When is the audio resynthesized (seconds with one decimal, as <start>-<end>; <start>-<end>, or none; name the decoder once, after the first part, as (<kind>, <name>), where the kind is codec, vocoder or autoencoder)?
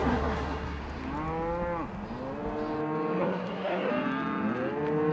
0.0-0.8 (codec, SNAC); 3.2-3.9